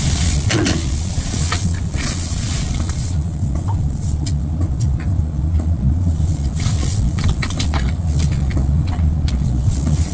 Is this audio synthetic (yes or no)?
yes